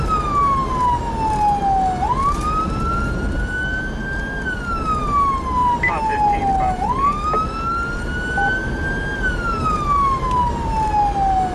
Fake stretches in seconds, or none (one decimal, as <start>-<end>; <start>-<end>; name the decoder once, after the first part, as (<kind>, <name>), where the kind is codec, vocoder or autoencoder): none